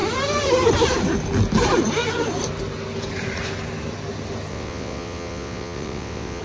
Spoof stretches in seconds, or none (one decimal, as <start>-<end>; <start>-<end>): 4.5-6.4